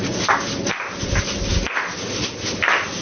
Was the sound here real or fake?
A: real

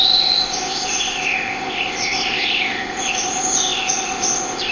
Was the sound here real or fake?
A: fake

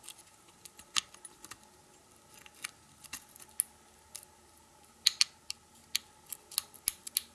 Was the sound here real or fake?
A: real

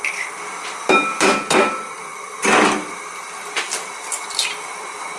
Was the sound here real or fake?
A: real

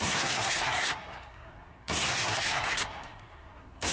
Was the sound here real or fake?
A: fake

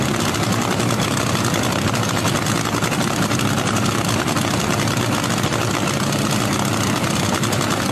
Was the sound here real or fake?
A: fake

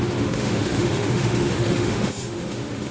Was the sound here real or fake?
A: fake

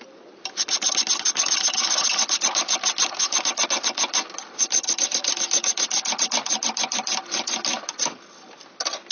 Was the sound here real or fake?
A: real